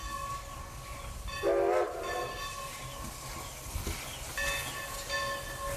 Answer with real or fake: real